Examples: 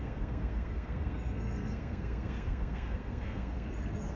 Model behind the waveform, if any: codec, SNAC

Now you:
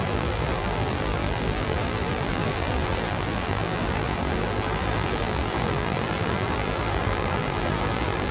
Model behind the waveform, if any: vocoder, BigVGAN v2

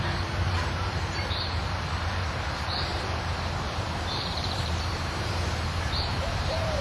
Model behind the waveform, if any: vocoder, BigVGAN v2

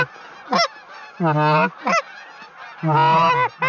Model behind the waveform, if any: none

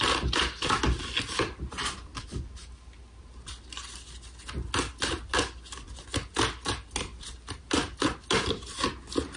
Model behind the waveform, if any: none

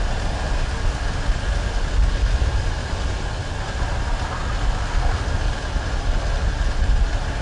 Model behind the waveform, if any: none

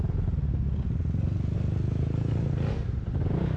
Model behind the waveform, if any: none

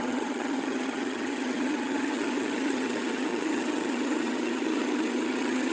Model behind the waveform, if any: vocoder, HiFi-GAN